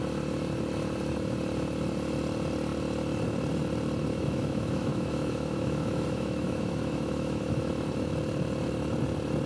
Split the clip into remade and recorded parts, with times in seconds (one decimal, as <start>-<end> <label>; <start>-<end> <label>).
0.0-4.1 recorded; 4.1-7.7 remade; 7.7-9.5 recorded